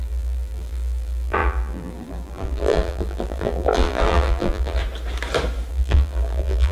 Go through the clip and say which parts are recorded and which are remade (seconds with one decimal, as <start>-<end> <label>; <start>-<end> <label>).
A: 0.0-4.8 remade; 4.8-5.7 recorded; 5.7-6.7 remade